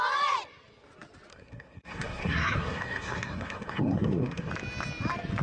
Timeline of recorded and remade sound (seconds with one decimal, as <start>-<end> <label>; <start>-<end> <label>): 0.0-1.3 recorded; 1.3-4.5 remade; 4.5-5.4 recorded

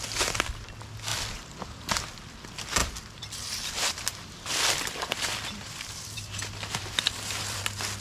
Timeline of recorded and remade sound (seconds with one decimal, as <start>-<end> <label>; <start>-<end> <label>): 0.0-1.1 recorded; 1.1-1.9 remade; 1.9-2.8 recorded; 2.8-7.6 remade; 7.6-8.0 recorded

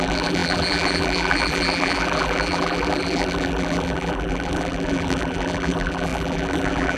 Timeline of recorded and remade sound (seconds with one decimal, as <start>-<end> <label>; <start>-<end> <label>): 0.0-7.0 remade

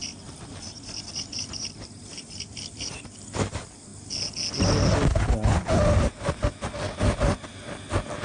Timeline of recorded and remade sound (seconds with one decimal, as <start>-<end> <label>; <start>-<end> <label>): 0.0-3.1 remade; 3.1-8.2 recorded

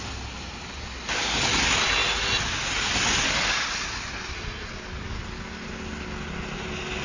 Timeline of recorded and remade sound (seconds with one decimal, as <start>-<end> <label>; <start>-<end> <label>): 0.0-7.0 recorded